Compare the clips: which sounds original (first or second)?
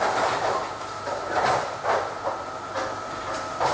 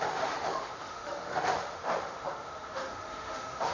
first